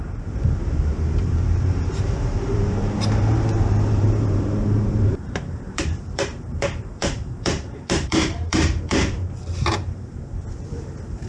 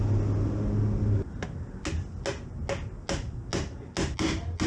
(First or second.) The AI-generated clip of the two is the first